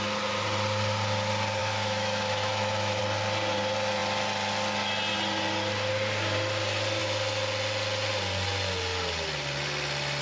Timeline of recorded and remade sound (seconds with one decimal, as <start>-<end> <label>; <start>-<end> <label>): 0.0-1.6 recorded; 1.6-3.0 remade; 3.0-10.2 recorded